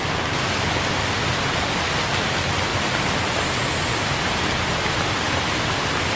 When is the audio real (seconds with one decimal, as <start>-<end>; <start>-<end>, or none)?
0.0-6.2